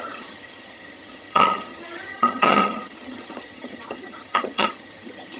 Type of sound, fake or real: fake